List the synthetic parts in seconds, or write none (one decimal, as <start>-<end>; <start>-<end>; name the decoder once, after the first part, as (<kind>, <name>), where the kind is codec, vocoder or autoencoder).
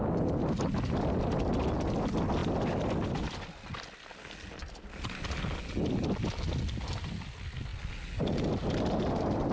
none